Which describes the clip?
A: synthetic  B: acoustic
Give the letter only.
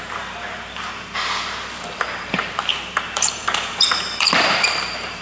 A